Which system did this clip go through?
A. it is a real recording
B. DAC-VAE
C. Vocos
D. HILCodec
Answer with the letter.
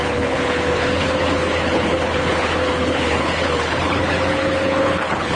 D